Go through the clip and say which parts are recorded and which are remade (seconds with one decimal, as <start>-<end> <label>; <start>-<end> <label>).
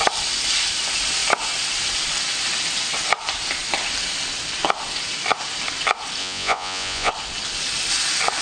0.0-6.2 recorded; 6.2-7.1 remade; 7.1-8.4 recorded